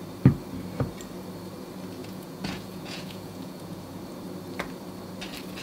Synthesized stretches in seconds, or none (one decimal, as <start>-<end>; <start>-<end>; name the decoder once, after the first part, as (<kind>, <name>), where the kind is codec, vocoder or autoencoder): 2.0-4.0 (vocoder, Vocos)